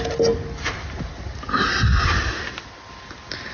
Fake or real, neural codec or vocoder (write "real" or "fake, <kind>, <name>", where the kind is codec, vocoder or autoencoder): real